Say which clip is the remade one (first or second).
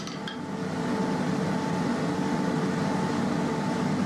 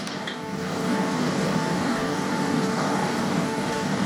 second